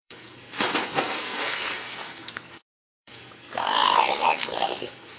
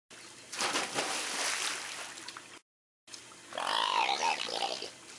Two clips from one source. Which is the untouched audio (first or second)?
second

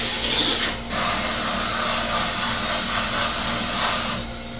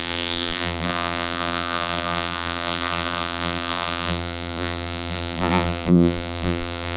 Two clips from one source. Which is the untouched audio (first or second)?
first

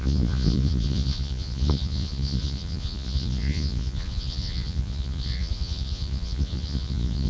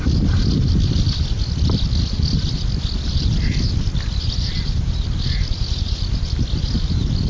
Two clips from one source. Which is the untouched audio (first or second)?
second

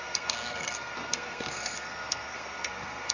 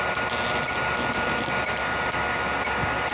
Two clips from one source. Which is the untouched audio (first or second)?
second